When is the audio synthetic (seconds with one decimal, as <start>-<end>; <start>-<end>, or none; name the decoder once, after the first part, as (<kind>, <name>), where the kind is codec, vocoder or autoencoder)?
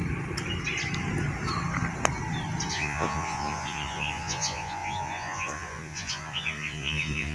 2.7-7.3 (vocoder, Vocos)